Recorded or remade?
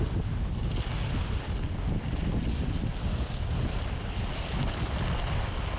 recorded